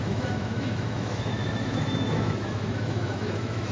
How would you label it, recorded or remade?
remade